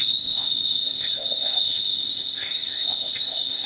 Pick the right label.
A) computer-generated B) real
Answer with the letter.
A